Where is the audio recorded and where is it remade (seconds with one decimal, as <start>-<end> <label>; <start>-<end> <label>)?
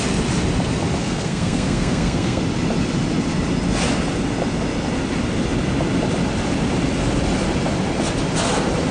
0.0-1.0 recorded; 1.0-2.4 remade; 2.4-8.9 recorded